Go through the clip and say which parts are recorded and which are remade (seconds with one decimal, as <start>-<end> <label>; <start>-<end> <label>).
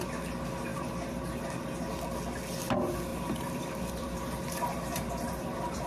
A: 0.0-3.1 recorded; 3.1-5.9 remade